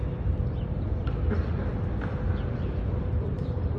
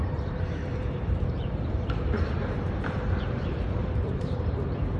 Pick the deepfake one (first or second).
second